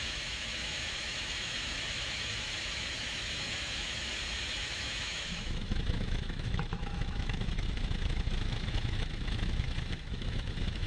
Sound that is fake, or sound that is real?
fake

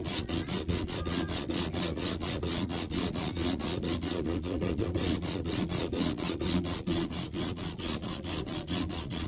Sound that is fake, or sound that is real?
fake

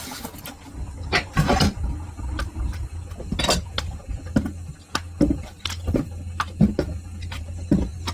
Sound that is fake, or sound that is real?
real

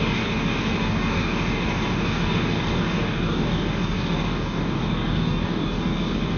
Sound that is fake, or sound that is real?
fake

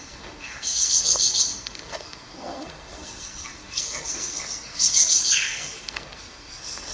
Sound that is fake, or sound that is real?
fake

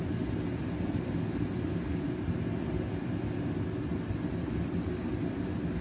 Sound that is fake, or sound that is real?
real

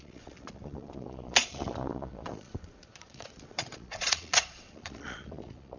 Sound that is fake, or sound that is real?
fake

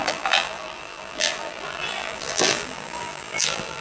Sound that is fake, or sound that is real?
fake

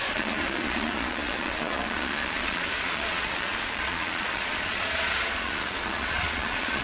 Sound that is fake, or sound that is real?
fake